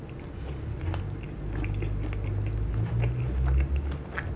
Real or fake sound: real